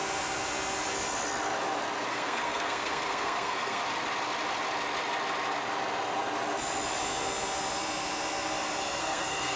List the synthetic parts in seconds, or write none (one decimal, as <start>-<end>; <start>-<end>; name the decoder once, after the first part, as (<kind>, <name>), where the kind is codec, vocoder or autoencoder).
2.1-3.8 (codec, SNAC); 9.0-9.6